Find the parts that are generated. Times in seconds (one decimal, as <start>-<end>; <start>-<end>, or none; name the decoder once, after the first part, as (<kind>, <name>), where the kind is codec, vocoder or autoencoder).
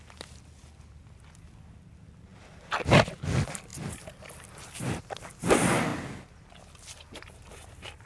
none